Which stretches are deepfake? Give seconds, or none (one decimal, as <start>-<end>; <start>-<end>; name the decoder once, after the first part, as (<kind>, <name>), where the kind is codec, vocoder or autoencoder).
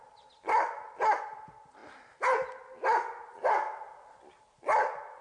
none